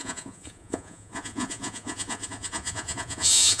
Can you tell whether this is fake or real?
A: fake